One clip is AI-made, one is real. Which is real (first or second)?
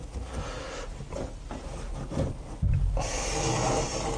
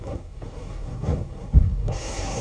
first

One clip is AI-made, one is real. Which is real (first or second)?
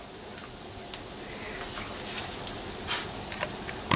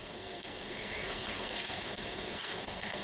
first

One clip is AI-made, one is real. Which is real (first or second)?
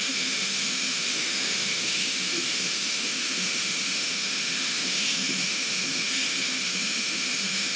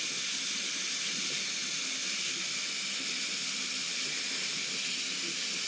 second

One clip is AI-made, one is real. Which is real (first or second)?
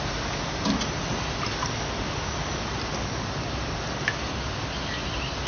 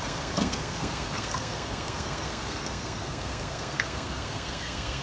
first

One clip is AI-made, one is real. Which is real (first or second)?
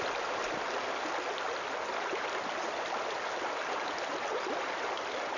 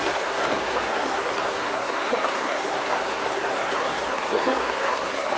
first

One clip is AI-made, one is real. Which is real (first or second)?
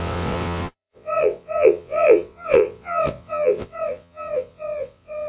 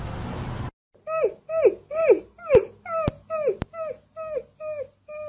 second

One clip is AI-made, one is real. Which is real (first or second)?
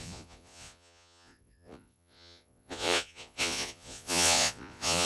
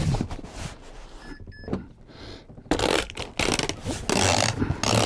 second